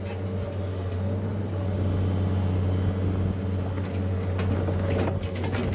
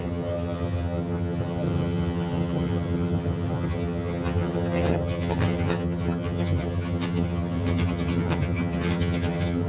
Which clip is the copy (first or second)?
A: second